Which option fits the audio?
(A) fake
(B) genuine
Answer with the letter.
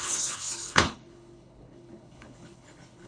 A